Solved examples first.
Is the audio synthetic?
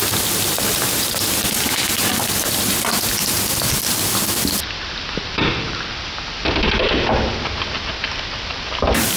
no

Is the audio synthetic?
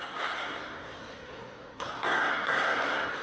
yes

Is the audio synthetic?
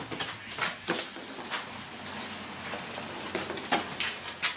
no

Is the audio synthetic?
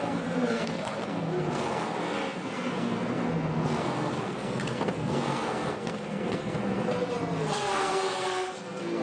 yes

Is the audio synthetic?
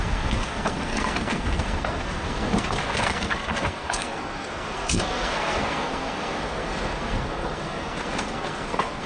yes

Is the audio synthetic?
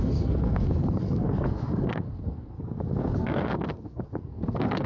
yes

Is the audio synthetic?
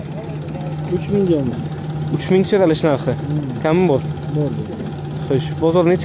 no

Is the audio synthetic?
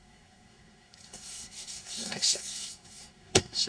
yes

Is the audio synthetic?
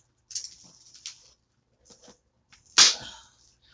no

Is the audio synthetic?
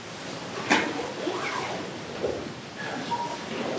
no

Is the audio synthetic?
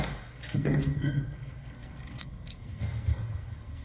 yes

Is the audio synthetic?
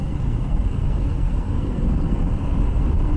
yes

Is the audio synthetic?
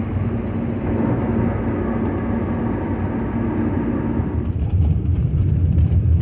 no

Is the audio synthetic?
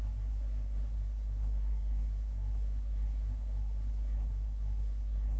yes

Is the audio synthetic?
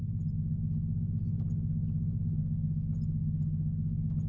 no